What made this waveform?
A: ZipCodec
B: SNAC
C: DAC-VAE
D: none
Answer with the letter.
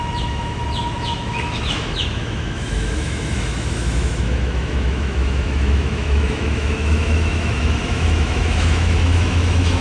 C